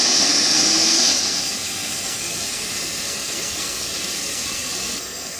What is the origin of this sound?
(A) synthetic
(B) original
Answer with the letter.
A